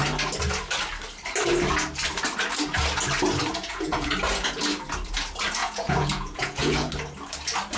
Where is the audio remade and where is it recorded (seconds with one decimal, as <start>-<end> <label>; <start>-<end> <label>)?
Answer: 0.0-3.6 recorded; 3.6-4.1 remade; 4.1-5.6 recorded; 5.6-6.9 remade; 6.9-7.8 recorded